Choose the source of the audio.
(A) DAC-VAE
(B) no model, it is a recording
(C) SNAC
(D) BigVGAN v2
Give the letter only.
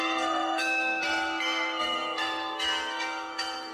C